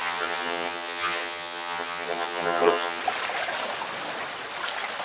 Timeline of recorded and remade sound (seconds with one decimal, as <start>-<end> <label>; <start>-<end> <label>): 0.0-3.0 remade; 3.0-5.0 recorded